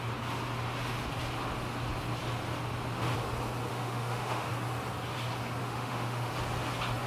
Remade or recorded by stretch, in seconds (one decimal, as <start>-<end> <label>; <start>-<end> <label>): 0.0-3.7 recorded; 3.7-4.5 remade; 4.5-5.6 recorded; 5.6-6.3 remade; 6.3-7.1 recorded